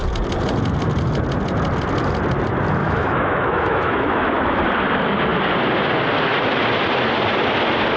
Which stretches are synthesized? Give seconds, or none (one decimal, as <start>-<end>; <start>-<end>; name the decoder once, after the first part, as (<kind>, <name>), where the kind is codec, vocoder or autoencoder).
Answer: 2.8-4.6 (autoencoder, DAC-VAE)